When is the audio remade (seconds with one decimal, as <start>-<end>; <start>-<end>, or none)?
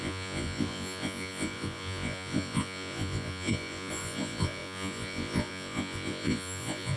0.0-7.0